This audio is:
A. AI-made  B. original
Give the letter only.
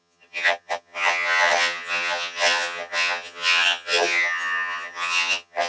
A